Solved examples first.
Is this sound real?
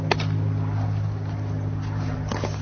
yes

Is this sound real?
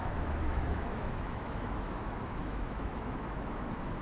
no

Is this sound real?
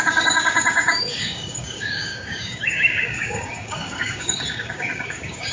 no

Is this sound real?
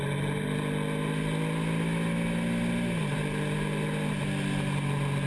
yes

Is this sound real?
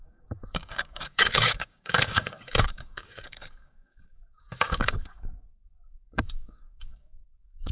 no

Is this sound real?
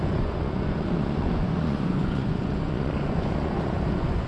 no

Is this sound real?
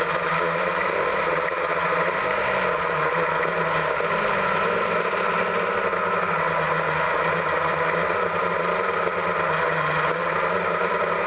yes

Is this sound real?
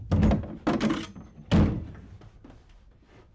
yes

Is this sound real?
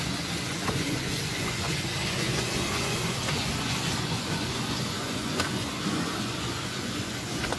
no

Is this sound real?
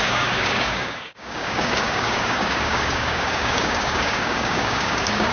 no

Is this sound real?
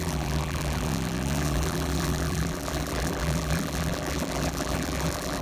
no